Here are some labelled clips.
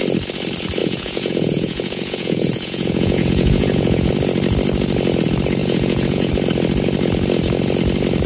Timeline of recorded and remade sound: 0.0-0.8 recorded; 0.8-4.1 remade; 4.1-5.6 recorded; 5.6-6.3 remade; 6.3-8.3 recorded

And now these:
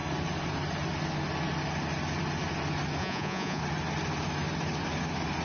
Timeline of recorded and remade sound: 0.0-3.0 recorded; 3.0-3.6 remade; 3.6-5.4 recorded

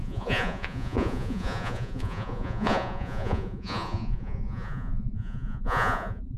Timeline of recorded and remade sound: 0.0-6.4 remade

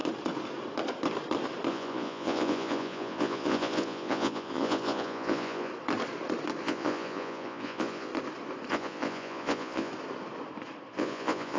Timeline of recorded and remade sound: 0.0-1.7 recorded; 1.7-5.7 remade; 5.7-6.6 recorded; 6.6-8.1 remade; 8.1-8.7 recorded; 8.7-9.9 remade; 9.9-10.9 recorded; 10.9-11.6 remade

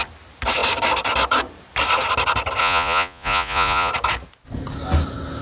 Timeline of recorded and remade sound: 0.0-2.6 recorded; 2.6-3.9 remade; 3.9-5.4 recorded